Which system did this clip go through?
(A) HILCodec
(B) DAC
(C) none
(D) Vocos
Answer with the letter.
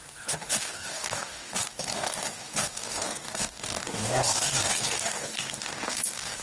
B